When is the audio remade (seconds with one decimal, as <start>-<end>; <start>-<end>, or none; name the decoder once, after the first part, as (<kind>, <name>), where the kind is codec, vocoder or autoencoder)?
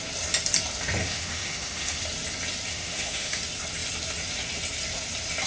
1.0-2.0 (autoencoder, DAC-VAE); 2.7-3.4